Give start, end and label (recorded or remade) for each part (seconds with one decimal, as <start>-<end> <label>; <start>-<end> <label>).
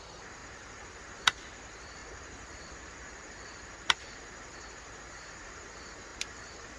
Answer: 0.0-6.8 remade